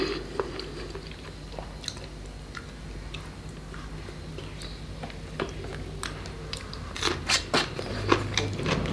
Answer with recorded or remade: recorded